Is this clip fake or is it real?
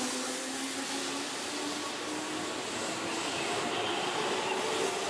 real